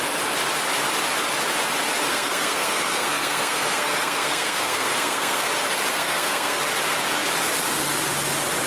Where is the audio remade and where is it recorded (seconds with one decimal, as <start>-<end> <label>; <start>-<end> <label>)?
0.0-2.1 recorded; 2.1-5.5 remade; 5.5-5.9 recorded; 5.9-6.6 remade; 6.6-8.7 recorded